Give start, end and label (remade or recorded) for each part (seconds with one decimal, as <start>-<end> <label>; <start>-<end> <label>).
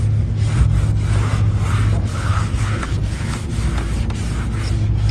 0.0-2.1 recorded; 2.1-3.5 remade; 3.5-5.1 recorded